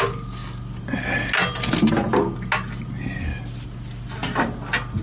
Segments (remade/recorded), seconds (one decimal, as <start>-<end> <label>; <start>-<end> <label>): 0.0-5.0 recorded